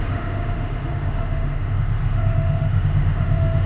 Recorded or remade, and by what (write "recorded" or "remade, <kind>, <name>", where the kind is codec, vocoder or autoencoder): remade, autoencoder, DAC-VAE